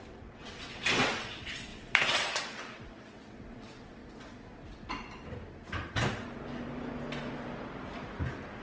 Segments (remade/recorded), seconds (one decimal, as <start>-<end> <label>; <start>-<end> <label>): 0.0-4.0 remade; 4.0-8.6 recorded